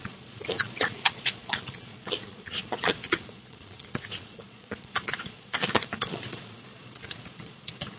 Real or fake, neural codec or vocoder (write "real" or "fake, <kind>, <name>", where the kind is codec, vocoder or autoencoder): fake, vocoder, Vocos